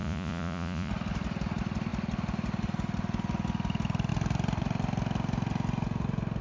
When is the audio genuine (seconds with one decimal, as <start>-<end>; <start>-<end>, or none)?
0.9-6.4